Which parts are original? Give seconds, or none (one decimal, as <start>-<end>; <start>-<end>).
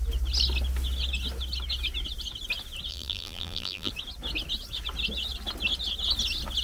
0.0-2.9; 3.9-6.6